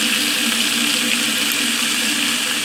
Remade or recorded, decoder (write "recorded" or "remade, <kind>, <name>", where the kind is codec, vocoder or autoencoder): recorded